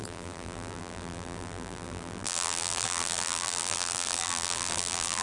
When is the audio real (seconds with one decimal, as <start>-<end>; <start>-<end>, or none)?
none